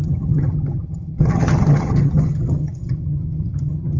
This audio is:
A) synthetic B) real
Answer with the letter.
A